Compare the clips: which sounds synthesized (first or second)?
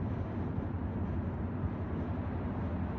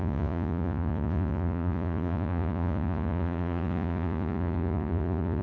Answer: second